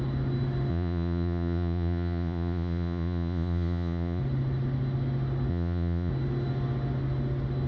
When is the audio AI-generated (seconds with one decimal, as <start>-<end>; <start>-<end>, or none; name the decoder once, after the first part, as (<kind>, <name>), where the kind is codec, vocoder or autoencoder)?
0.7-4.2 (vocoder, Vocos); 5.5-6.1